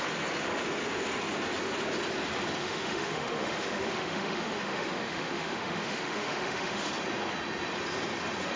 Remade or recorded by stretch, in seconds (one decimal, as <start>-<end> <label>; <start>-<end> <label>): 0.0-2.6 recorded; 2.6-6.9 remade; 6.9-8.6 recorded